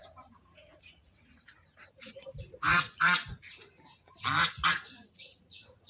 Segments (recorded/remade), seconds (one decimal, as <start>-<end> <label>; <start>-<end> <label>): 0.0-3.5 remade; 3.5-4.4 recorded; 4.4-5.9 remade